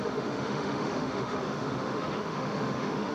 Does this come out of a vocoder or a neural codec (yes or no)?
yes